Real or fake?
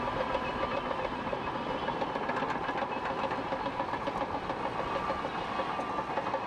real